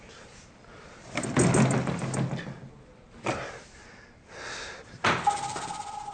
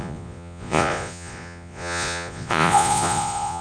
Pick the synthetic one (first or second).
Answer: second